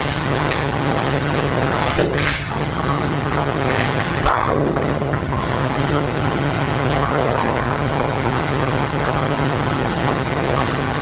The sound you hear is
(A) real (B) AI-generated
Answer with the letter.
B